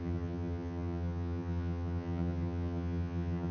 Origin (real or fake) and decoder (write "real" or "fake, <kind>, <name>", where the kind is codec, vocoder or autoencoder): fake, vocoder, HiFi-GAN